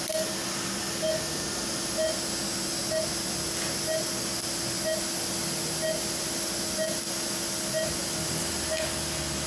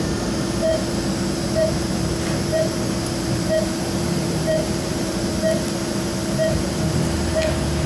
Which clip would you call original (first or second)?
first